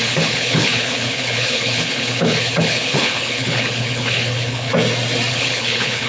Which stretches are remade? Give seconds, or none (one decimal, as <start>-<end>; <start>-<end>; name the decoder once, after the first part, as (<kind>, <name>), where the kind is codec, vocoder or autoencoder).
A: 0.0-4.7 (codec, HILCodec); 5.3-6.1